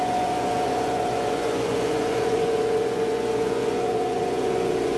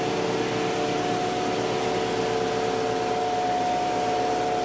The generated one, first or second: first